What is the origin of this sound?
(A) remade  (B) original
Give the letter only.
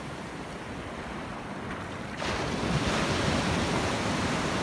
B